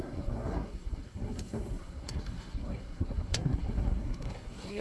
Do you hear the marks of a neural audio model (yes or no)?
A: yes